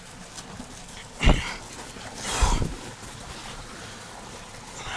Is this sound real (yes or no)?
yes